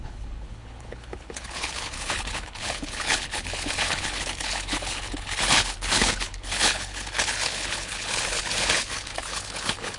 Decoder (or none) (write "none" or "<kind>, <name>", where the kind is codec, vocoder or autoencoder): codec, HILCodec